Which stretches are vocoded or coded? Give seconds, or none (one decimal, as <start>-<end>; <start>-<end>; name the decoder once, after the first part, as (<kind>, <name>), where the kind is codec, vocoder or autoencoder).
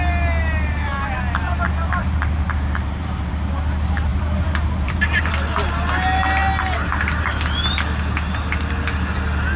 2.0-3.3 (vocoder, BigVGAN v2); 4.1-5.3